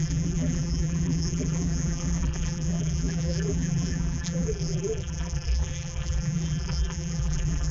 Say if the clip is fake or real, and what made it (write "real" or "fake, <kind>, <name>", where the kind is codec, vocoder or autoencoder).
fake, vocoder, BigVGAN v2